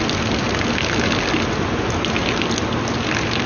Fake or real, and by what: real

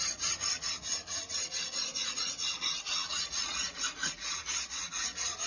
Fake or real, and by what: fake, vocoder, Vocos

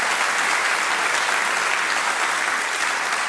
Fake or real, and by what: real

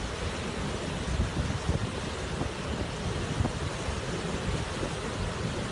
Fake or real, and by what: real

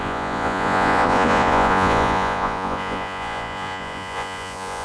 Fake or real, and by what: fake, vocoder, Vocos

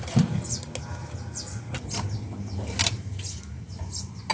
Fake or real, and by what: real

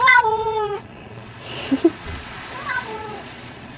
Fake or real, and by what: fake, vocoder, Vocos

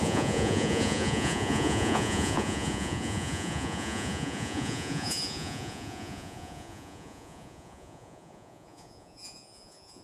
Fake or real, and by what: fake, vocoder, Vocos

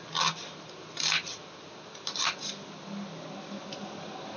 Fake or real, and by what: real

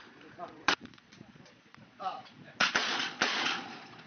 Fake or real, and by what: fake, vocoder, Vocos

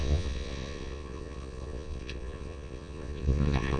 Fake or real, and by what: fake, vocoder, Vocos